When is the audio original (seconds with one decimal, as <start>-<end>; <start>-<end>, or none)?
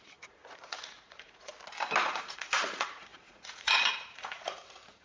1.5-2.0